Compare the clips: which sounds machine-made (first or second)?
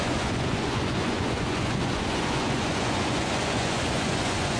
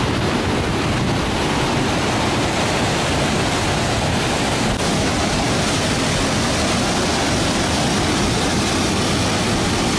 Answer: first